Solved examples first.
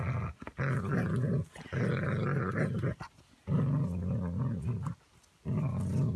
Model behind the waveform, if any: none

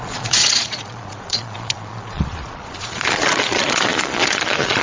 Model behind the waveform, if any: vocoder, Vocos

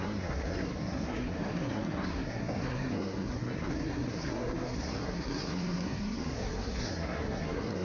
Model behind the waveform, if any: codec, SNAC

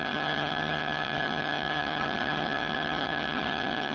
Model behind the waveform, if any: vocoder, HiFi-GAN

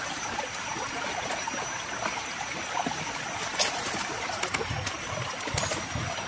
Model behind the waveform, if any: none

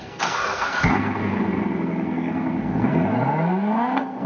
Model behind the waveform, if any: codec, SNAC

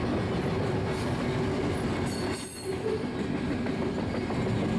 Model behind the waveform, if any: none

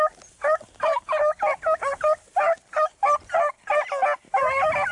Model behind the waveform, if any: none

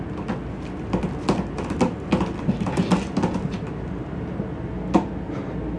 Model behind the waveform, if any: none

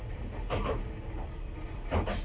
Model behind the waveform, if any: none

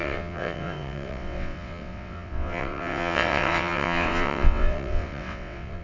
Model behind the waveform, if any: vocoder, WaveNeXt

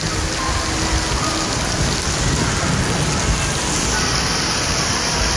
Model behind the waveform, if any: none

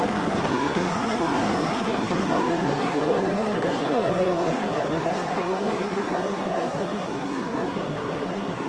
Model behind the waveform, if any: codec, SNAC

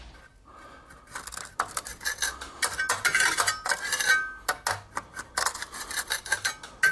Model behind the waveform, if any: none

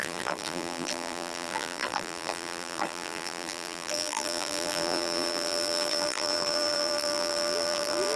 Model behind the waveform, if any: vocoder, BigVGAN v2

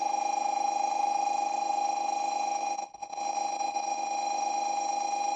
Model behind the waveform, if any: none